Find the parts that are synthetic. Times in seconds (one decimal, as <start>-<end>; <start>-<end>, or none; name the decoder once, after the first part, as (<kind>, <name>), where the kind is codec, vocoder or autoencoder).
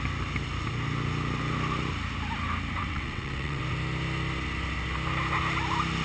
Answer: 2.8-3.6 (vocoder, WaveNeXt)